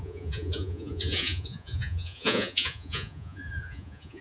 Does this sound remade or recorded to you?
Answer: remade